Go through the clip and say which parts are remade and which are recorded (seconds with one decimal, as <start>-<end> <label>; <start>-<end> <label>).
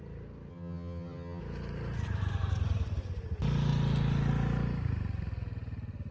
0.0-0.5 recorded; 0.5-1.4 remade; 1.4-6.1 recorded